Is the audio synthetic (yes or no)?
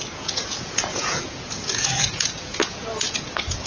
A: yes